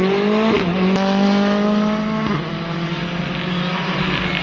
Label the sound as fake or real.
real